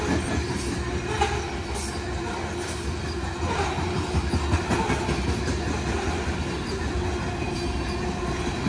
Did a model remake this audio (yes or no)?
no